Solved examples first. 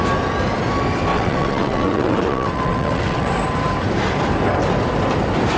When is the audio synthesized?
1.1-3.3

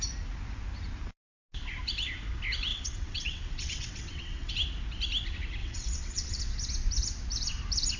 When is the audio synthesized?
2.7-4.5; 5.6-6.4

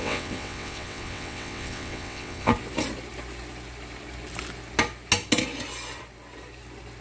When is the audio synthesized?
0.0-2.5

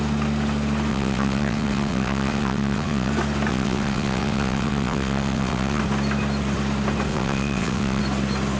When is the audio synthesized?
0.9-3.1; 3.5-5.8; 7.1-8.0

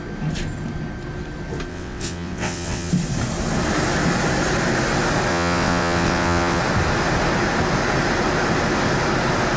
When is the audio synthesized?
1.7-2.9; 5.3-6.6

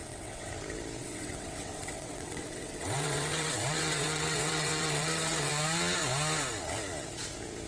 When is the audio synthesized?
0.0-0.5; 1.0-5.5